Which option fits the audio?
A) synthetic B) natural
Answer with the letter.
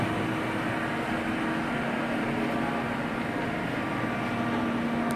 B